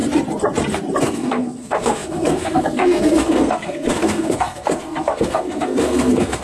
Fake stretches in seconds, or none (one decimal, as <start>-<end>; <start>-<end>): 1.0-6.4